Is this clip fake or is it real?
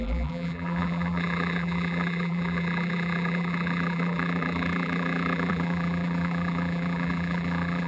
fake